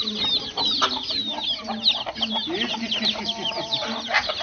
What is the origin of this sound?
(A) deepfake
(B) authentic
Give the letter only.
B